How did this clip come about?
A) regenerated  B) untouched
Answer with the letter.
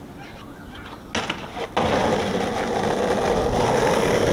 B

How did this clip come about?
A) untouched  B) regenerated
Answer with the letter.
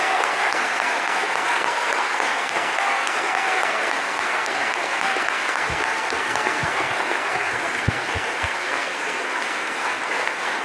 B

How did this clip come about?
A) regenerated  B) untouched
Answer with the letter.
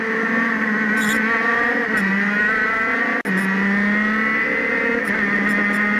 B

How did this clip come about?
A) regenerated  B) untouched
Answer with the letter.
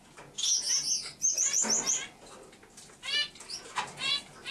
B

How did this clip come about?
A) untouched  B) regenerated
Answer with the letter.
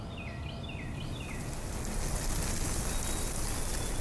A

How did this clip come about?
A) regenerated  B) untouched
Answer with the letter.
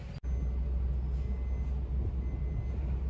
B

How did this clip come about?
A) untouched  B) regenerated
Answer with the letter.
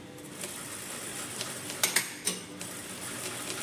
A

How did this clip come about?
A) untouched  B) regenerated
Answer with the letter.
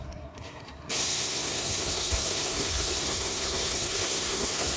B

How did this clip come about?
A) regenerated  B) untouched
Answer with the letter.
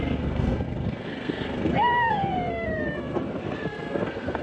A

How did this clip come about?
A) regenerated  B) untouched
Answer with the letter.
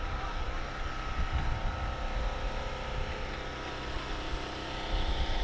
B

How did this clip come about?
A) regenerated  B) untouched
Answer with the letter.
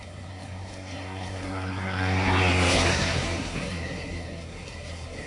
A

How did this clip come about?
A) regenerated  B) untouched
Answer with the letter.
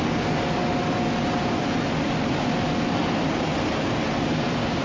B